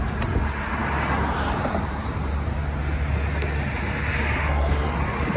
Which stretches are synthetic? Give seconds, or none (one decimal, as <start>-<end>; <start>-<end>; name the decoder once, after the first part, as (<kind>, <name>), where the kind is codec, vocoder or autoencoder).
4.4-5.0 (codec, SNAC)